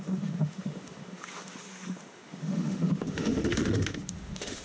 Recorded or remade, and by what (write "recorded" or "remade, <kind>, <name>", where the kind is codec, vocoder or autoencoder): remade, autoencoder, DAC-VAE